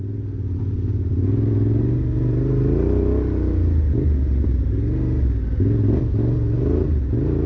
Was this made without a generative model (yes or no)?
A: yes